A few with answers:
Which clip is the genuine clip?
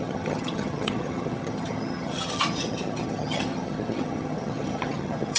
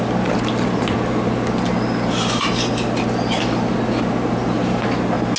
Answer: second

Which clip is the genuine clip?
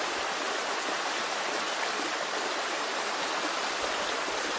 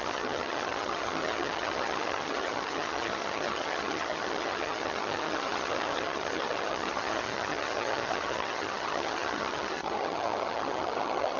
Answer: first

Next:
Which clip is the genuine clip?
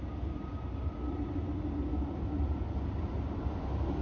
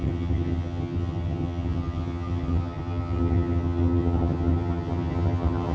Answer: first